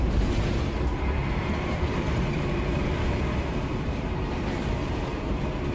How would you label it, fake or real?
fake